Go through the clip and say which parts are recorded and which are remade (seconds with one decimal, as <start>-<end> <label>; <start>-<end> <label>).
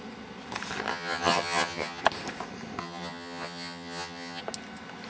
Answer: 0.0-0.9 recorded; 0.9-2.0 remade; 2.0-2.8 recorded; 2.8-4.4 remade; 4.4-5.1 recorded